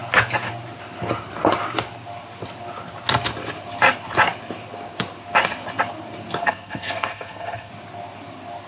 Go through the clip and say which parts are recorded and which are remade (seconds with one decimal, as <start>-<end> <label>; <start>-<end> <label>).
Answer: 0.0-6.4 recorded; 6.4-7.7 remade; 7.7-8.7 recorded